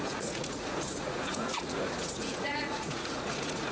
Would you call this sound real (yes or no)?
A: no